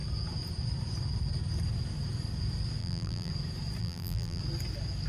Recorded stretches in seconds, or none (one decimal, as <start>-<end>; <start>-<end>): 0.0-2.8; 3.3-3.8; 4.4-5.1